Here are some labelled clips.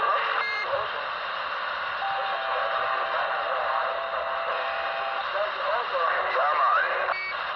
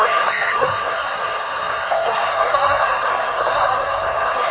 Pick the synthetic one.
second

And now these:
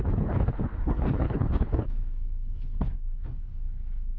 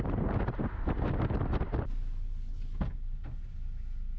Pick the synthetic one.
first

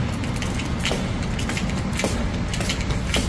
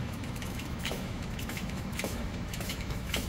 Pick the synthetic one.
second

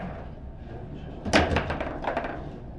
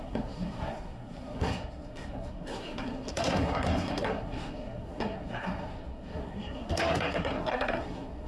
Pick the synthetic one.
second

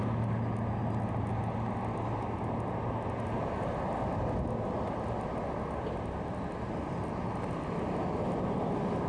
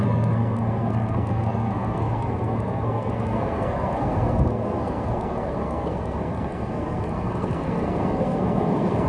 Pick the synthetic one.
second